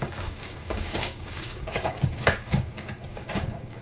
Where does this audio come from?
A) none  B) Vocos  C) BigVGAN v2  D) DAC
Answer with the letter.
D